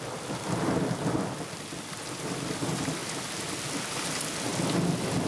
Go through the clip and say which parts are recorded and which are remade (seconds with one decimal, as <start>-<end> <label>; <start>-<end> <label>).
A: 0.0-5.3 recorded